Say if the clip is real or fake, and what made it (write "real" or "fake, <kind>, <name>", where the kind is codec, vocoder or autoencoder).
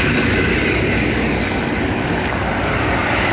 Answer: fake, codec, DAC